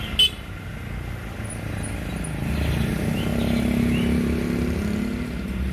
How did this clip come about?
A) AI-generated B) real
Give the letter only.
B